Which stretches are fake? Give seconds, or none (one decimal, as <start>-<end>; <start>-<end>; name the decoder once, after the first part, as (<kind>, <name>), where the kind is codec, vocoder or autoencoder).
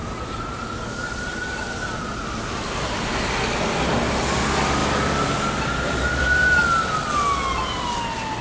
0.0-0.6 (vocoder, BigVGAN v2)